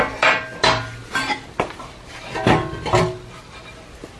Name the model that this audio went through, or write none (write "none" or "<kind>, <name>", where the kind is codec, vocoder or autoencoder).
none